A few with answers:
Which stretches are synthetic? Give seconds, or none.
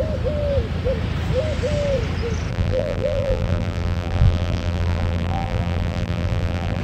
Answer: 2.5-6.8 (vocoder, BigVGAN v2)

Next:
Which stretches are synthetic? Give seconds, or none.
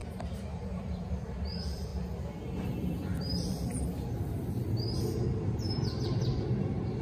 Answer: 0.0-1.9 (vocoder, BigVGAN v2); 3.2-3.7; 5.0-7.0